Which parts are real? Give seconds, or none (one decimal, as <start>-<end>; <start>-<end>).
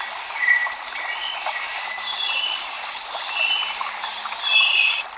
0.0-0.6; 2.7-5.2